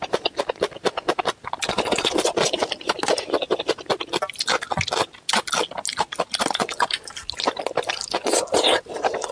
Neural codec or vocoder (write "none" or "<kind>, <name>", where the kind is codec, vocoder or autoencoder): none